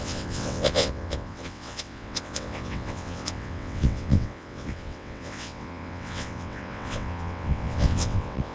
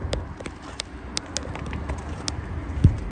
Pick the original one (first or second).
second